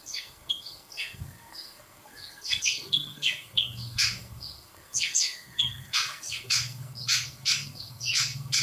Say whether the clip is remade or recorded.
remade